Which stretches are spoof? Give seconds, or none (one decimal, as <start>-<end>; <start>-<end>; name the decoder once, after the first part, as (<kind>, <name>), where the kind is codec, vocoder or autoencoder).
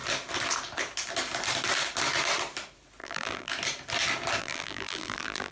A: 3.0-3.5 (vocoder, BigVGAN v2); 4.4-5.5